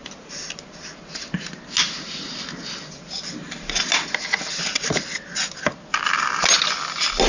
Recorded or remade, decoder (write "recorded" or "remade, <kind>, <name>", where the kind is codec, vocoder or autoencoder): recorded